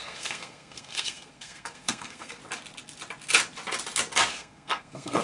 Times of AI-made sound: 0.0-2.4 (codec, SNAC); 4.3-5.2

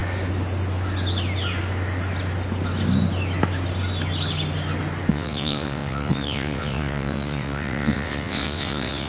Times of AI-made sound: 5.1-9.1 (vocoder, WaveNeXt)

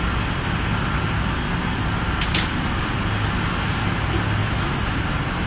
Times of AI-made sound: 4.4-5.0 (autoencoder, DAC-VAE)

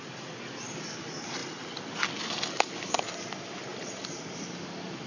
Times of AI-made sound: none

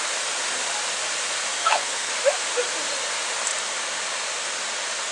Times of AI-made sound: 1.6-2.1 (codec, SNAC)

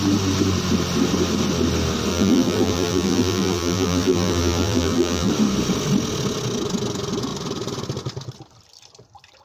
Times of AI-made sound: 2.1-5.3 (vocoder, BigVGAN v2)